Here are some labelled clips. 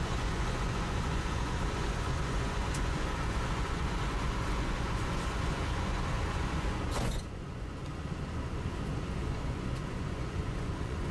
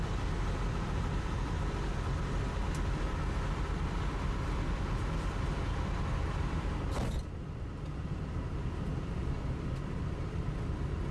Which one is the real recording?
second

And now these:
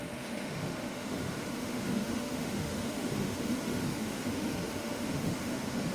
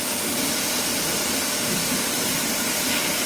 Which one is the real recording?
second